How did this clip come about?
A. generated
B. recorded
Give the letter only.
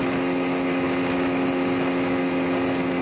B